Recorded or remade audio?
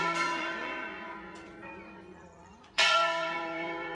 remade